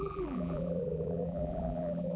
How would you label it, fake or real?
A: fake